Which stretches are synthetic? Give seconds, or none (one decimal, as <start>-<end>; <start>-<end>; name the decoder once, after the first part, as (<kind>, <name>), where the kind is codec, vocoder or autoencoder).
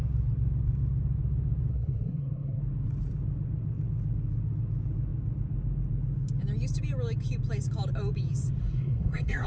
1.7-2.6 (codec, SNAC); 8.6-9.5